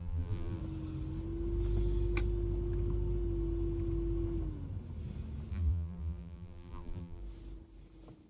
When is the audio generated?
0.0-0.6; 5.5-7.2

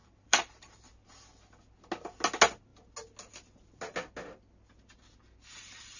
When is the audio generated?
0.0-0.8